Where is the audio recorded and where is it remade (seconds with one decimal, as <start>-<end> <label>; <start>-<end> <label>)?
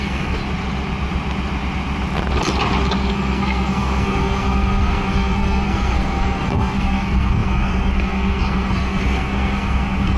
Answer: 0.0-0.4 remade; 0.4-3.1 recorded; 3.1-10.2 remade